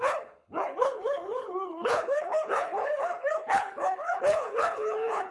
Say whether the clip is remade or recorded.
remade